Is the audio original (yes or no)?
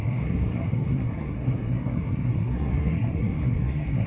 no